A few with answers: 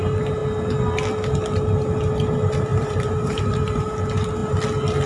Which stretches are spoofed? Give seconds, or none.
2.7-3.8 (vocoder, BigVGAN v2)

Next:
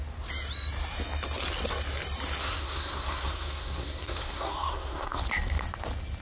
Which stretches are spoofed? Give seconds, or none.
2.4-5.2 (codec, SNAC)

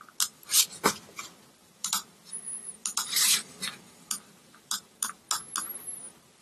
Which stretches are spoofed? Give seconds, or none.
1.6-5.2 (vocoder, BigVGAN v2)

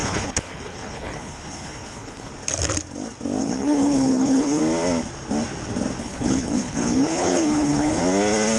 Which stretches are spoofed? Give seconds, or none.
0.0-2.3 (codec, HILCodec); 3.4-4.6; 6.0-8.0

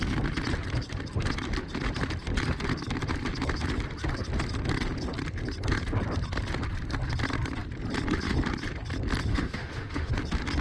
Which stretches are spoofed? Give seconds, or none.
9.3-10.1 (autoencoder, DAC-VAE)

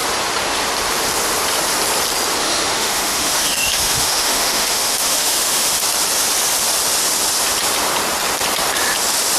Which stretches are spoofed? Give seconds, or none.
2.4-5.8 (autoencoder, DAC-VAE)

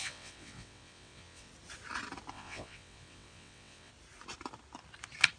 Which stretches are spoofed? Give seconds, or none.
0.0-1.5 (vocoder, WaveNeXt); 2.3-3.9

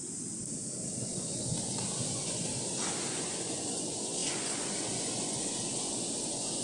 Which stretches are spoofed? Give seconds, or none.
1.0-2.5 (vocoder, Vocos); 3.1-6.6